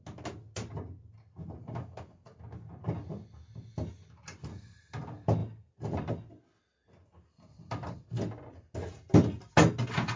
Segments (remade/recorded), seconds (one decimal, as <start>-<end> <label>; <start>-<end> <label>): 0.0-10.2 recorded